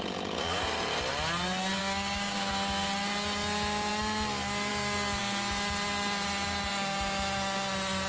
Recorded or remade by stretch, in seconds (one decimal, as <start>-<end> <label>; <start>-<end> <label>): 0.0-1.8 recorded; 1.8-2.5 remade; 2.5-8.1 recorded